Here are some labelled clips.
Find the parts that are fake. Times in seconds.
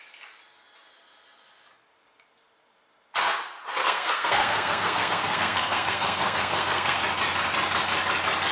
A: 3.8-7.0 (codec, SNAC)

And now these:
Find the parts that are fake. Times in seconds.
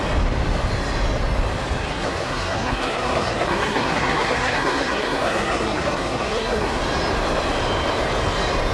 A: 1.8-6.8 (codec, SNAC)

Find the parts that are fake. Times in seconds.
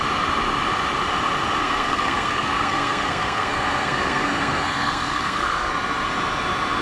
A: 1.6-5.7 (codec, SNAC)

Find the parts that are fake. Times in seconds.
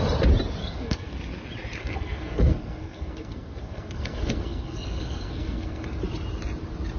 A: 0.6-1.1 (codec, SNAC); 1.8-6.0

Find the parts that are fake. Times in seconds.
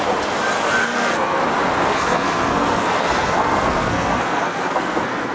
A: 0.8-1.4 (codec, SNAC); 1.9-5.3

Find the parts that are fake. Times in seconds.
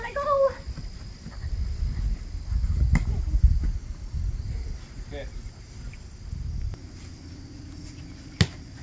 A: none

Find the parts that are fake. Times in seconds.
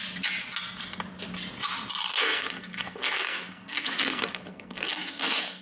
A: 2.1-5.6 (codec, SNAC)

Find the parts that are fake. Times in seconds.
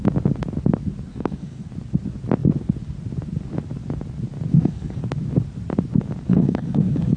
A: 1.1-1.7 (codec, SNAC); 4.5-5.0; 6.3-7.2